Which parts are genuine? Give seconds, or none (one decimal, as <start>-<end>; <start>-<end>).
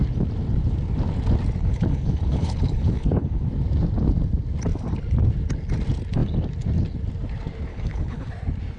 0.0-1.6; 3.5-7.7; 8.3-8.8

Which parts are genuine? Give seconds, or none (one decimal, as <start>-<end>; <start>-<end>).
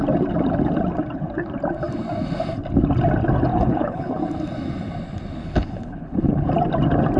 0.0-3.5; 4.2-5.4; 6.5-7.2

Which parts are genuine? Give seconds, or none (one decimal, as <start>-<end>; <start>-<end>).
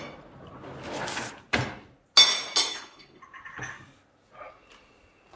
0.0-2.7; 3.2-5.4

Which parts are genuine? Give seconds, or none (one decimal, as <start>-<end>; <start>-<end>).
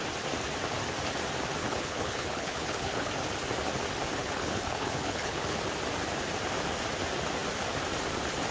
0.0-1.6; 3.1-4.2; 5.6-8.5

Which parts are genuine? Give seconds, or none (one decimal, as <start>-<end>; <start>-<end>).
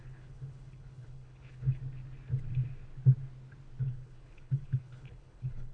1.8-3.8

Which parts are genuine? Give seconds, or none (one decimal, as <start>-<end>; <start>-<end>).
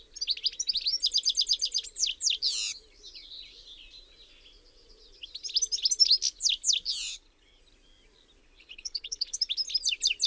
0.0-7.1; 7.6-8.4; 9.4-10.3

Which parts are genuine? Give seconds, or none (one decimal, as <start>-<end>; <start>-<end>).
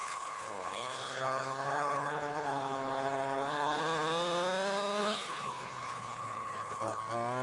3.8-5.0; 7.0-7.4